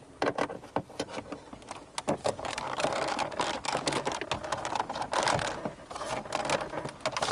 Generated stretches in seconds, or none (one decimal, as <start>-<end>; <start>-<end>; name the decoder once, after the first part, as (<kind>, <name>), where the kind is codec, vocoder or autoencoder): 2.2-4.1 (codec, DAC)